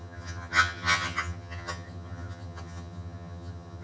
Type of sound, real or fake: fake